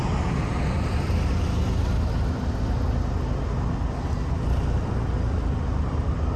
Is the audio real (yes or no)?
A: yes